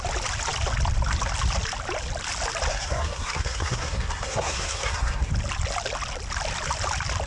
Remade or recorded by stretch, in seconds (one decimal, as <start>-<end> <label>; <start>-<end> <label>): 0.0-2.7 recorded; 2.7-5.3 remade; 5.3-7.3 recorded